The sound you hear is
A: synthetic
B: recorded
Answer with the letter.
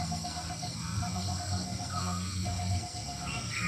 A